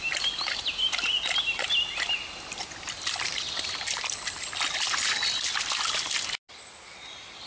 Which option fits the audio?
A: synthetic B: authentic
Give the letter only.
B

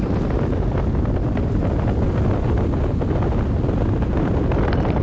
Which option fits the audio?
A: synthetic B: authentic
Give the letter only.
B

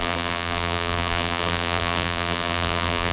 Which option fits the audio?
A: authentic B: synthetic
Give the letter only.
B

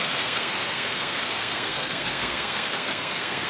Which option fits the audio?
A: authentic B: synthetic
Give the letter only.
B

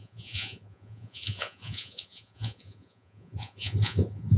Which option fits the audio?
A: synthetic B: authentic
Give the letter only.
A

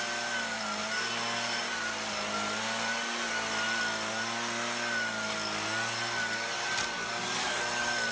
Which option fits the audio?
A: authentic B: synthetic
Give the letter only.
A